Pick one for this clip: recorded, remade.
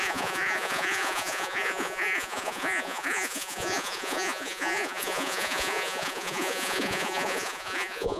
remade